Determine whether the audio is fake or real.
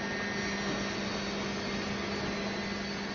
real